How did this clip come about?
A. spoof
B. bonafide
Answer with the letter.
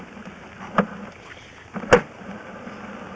B